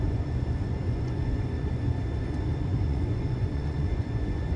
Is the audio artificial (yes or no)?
yes